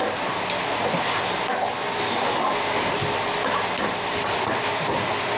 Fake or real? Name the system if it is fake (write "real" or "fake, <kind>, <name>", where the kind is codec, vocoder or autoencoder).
real